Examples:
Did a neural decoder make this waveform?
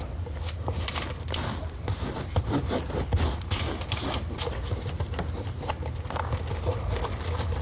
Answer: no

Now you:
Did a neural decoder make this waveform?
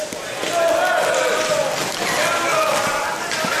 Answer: no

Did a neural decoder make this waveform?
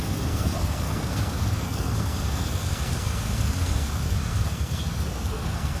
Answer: yes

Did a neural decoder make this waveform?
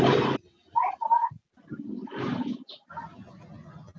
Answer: no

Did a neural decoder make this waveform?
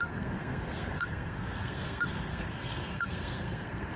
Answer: yes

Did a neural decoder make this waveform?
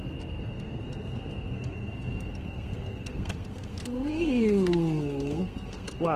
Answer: yes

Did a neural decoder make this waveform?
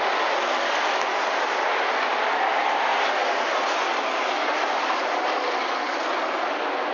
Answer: no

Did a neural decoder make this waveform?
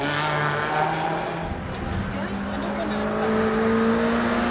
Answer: no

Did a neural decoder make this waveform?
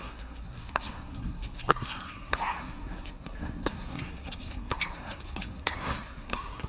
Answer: yes